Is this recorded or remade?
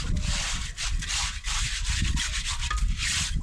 recorded